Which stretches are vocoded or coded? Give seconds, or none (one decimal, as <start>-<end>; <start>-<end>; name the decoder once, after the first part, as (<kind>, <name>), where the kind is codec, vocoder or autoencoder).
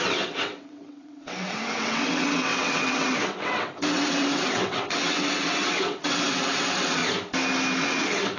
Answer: 0.0-7.0 (vocoder, WaveNeXt); 7.8-8.4